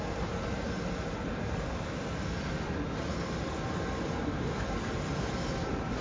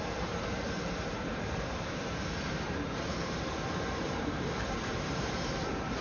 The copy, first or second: second